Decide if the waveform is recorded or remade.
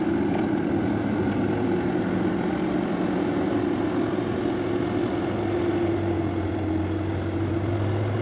recorded